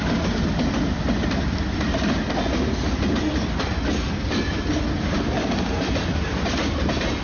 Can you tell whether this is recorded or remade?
recorded